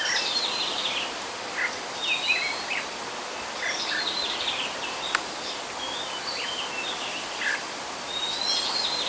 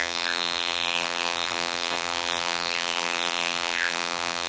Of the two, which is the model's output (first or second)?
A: second